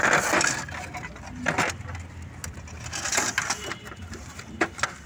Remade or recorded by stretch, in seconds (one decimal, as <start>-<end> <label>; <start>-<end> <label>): 0.0-5.1 recorded